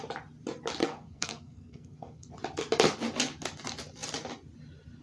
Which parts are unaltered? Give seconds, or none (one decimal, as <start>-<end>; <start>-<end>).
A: 0.0-0.8; 2.3-5.0